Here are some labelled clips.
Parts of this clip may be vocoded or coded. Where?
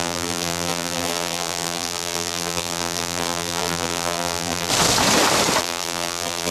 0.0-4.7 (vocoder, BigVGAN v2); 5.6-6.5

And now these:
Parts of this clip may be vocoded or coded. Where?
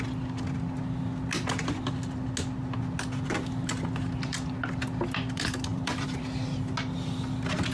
5.7-6.2 (vocoder, BigVGAN v2)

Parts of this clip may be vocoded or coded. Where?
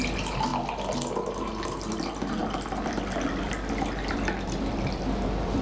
2.4-5.6 (vocoder, BigVGAN v2)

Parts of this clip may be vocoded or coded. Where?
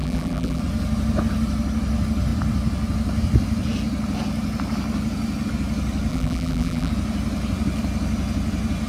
0.0-0.6 (vocoder, BigVGAN v2); 6.1-6.9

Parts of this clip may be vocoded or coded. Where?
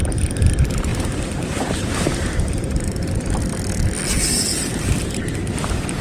0.9-3.4 (vocoder, BigVGAN v2); 4.5-6.0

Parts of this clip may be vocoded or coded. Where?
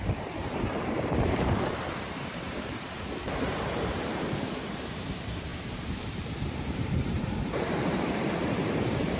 0.0-9.2 (vocoder, BigVGAN v2)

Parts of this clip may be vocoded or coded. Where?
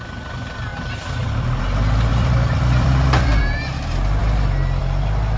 0.7-1.6 (vocoder, BigVGAN v2); 2.1-3.4